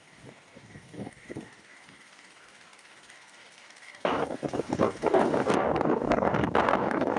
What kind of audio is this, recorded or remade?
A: remade